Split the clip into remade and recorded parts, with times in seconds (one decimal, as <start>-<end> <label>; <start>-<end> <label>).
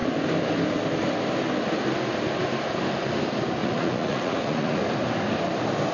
0.0-3.6 recorded; 3.6-4.8 remade; 4.8-5.9 recorded